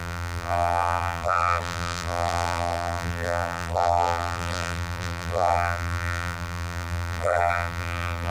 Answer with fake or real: fake